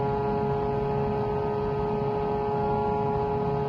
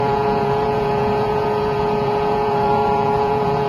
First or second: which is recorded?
first